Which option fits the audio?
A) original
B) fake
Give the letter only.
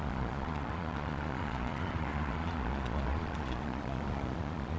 B